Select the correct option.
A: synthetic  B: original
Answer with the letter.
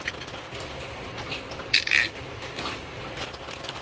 B